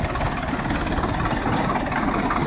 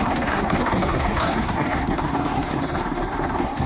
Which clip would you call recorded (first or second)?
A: first